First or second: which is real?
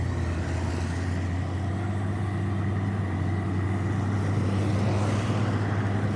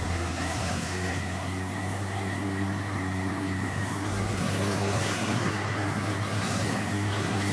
first